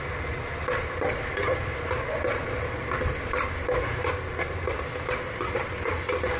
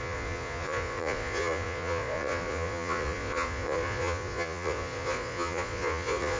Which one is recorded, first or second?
first